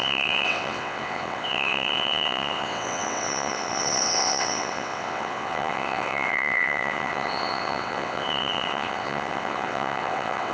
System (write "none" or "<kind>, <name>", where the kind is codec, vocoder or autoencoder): vocoder, WaveNeXt